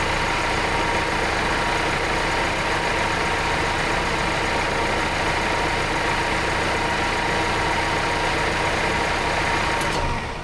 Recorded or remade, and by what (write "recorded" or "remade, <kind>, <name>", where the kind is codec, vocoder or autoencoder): recorded